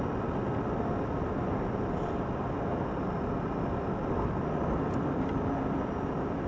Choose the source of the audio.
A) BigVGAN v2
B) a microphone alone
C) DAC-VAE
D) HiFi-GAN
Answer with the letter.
B